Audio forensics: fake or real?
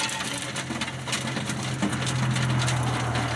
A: real